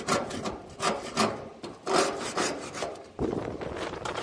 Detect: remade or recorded recorded